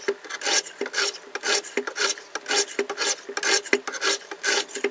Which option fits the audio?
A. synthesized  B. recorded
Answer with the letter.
B